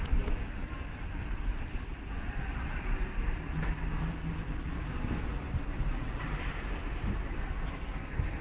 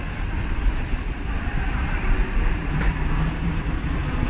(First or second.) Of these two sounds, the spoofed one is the second